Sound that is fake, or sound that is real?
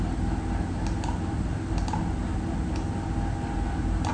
real